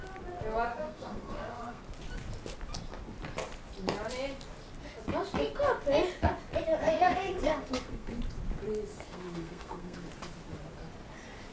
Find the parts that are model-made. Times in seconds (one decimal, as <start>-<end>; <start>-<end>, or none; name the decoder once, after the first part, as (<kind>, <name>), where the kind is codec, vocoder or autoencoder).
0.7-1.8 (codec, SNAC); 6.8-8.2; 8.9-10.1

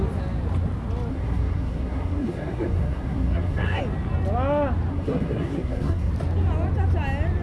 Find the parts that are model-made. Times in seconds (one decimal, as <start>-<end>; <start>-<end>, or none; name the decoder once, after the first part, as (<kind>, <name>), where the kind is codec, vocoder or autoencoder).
1.1-3.8 (codec, SNAC); 4.9-6.1

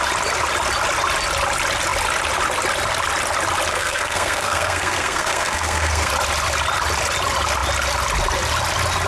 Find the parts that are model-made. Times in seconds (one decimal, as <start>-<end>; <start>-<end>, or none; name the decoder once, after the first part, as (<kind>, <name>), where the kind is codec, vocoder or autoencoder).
3.7-6.1 (codec, SNAC)

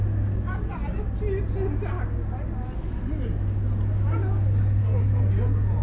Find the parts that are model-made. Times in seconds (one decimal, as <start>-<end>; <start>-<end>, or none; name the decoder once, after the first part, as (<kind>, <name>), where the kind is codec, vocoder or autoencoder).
4.8-5.3 (codec, SNAC)

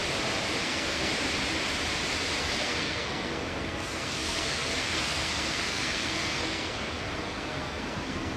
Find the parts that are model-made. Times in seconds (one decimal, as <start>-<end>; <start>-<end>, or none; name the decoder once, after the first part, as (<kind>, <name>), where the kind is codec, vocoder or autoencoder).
0.6-1.1 (codec, SNAC); 2.4-8.4